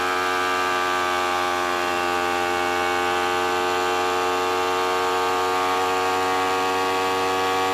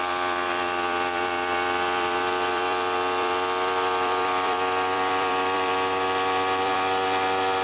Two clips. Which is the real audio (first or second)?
first